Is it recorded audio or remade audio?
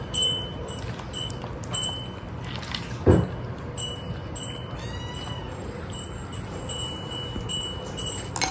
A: recorded